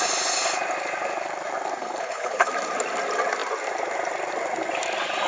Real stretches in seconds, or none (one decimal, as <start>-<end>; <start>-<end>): 0.0-1.8; 2.5-5.3